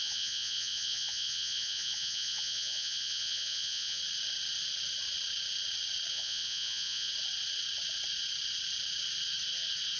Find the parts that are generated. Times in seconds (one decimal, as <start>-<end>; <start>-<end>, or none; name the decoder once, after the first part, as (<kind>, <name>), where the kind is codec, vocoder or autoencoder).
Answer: 0.0-4.0 (vocoder, Vocos); 6.1-7.1